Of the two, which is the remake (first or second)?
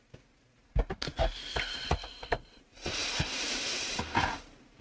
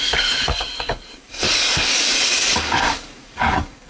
second